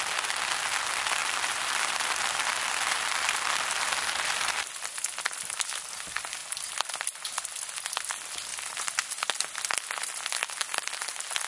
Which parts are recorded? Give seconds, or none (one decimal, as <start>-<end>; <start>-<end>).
0.0-1.2; 2.6-8.5; 9.4-11.5